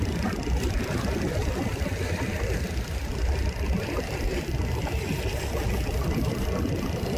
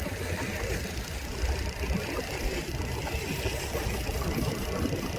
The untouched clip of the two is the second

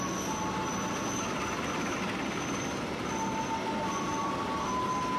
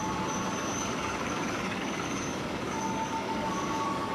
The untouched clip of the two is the first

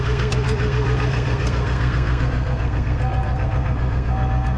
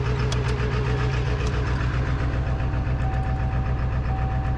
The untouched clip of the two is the second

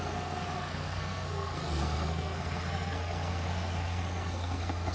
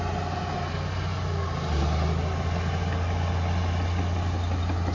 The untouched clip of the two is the second